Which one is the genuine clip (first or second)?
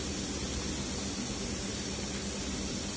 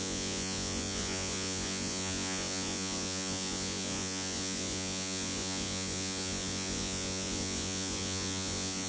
first